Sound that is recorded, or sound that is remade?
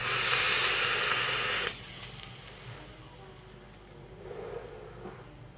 recorded